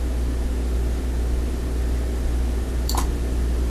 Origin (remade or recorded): recorded